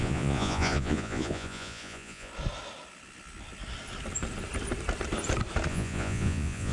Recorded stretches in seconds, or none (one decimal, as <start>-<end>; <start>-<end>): 2.3-5.7